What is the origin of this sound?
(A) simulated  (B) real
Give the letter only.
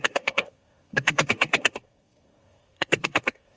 A